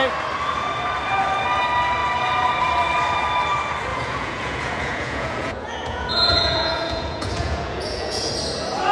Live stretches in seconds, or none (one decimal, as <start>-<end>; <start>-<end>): 0.0-3.9; 8.3-8.9